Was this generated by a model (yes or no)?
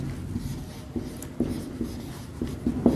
no